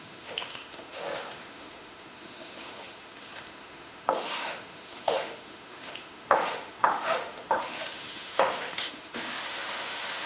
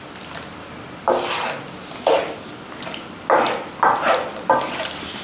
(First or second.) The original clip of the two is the second